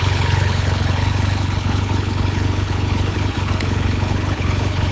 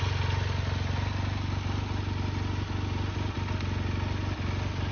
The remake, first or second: first